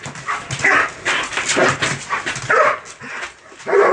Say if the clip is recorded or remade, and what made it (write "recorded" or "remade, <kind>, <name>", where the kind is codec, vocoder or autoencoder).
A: recorded